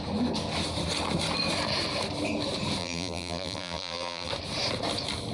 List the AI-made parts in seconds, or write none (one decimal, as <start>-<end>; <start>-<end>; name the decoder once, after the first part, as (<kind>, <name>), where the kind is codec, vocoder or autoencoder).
2.8-4.3 (vocoder, BigVGAN v2)